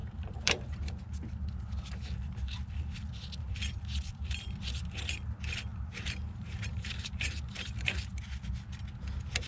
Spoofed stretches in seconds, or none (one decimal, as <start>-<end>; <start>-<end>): 0.0-1.1; 5.7-8.2